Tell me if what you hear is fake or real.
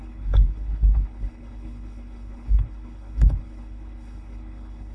fake